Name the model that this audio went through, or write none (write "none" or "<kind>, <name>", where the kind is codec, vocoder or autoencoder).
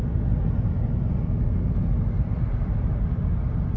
none